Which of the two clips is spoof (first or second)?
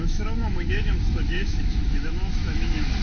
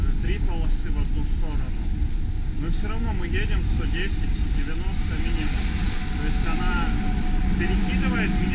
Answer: first